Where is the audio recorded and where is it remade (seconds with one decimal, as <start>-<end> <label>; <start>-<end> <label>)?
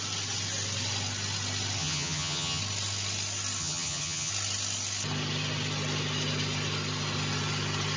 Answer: 0.0-1.8 recorded; 1.8-2.6 remade; 2.6-3.6 recorded; 3.6-4.3 remade; 4.3-8.0 recorded